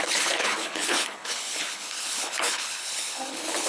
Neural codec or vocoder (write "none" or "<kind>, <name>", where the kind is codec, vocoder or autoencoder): codec, HILCodec